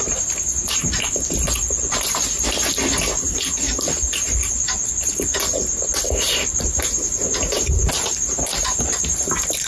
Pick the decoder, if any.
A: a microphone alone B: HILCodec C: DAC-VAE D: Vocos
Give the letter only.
A